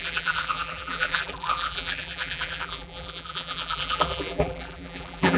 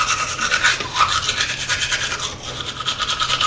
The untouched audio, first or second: second